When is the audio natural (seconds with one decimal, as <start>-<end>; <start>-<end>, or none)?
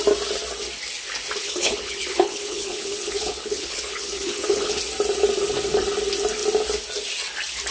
0.0-1.4; 4.8-7.7